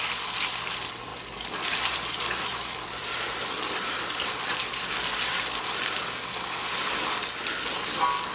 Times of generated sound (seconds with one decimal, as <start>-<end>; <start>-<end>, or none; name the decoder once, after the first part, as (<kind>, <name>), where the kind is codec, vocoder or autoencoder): 1.1-3.5 (vocoder, BigVGAN v2); 5.3-6.3